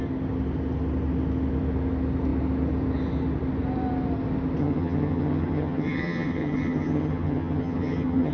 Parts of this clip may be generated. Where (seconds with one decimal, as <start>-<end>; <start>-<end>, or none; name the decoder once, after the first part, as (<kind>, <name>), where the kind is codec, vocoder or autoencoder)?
4.6-8.3 (vocoder, HiFi-GAN)